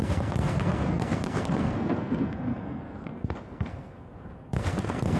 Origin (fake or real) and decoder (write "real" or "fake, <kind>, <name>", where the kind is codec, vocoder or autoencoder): fake, codec, SNAC